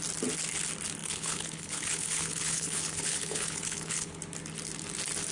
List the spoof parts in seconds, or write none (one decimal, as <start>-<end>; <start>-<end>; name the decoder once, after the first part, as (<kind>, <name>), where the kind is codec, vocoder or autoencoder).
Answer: 1.0-4.2 (codec, HILCodec)